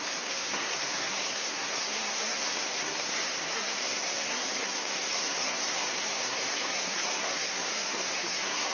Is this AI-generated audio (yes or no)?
yes